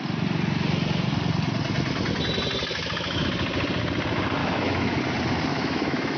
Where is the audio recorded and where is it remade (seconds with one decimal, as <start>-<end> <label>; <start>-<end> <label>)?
0.0-2.7 recorded; 2.7-3.3 remade; 3.3-4.4 recorded; 4.4-5.0 remade; 5.0-5.5 recorded; 5.5-6.2 remade